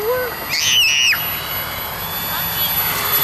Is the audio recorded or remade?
recorded